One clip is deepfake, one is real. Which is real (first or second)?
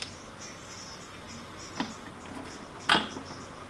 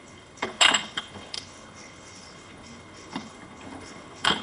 first